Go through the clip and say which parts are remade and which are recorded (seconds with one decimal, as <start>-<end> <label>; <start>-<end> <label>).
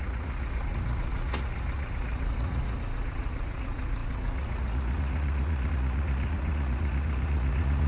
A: 0.0-7.9 remade